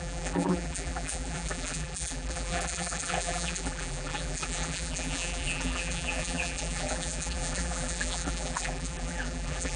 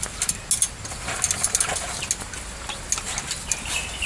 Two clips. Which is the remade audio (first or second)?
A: first